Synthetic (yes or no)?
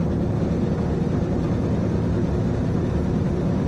no